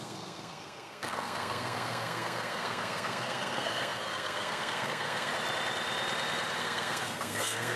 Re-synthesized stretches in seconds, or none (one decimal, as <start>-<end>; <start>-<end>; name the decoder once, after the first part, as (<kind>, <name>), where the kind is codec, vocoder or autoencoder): 0.0-5.3 (codec, SNAC); 6.6-7.8